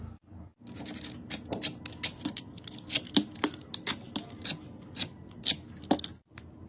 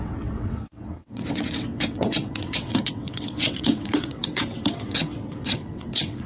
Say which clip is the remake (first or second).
second